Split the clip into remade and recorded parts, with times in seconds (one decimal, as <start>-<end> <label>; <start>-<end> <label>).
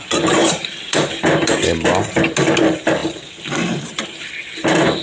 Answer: 0.0-0.4 recorded; 0.4-1.5 remade; 1.5-5.0 recorded